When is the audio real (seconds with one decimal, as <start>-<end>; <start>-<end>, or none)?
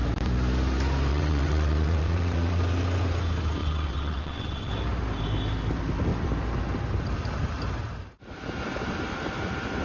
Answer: 0.0-1.1; 2.6-3.6; 4.7-9.8